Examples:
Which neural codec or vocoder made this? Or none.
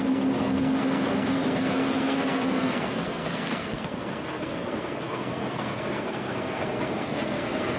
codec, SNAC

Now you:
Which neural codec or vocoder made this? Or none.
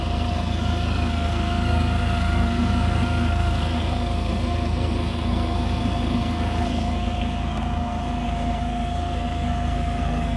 codec, SNAC